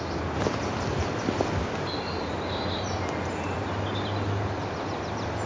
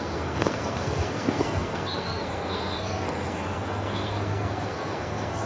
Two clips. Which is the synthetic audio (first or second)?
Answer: second